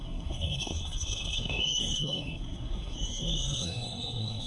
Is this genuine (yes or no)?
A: no